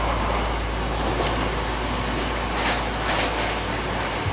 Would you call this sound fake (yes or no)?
no